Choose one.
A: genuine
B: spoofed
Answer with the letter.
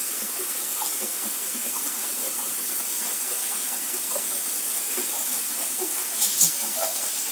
B